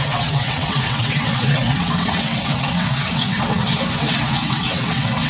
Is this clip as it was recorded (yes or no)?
no